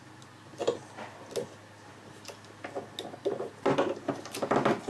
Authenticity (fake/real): real